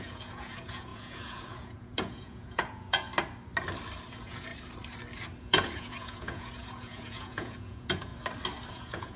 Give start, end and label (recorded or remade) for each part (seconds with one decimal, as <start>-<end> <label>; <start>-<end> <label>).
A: 0.0-3.1 remade; 3.1-4.1 recorded; 4.1-4.5 remade; 4.5-5.4 recorded; 5.4-8.1 remade; 8.1-8.7 recorded; 8.7-9.2 remade